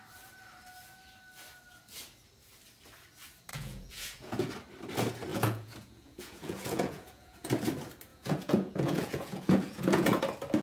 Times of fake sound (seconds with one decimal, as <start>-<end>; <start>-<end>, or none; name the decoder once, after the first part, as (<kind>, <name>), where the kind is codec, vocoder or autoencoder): 3.5-4.5 (vocoder, Vocos); 5.3-7.5; 8.1-10.2